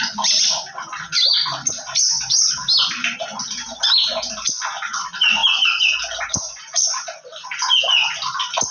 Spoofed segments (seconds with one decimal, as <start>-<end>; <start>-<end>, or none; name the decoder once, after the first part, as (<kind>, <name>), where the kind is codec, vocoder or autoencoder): none